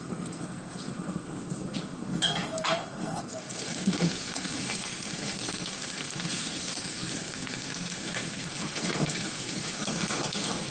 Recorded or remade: remade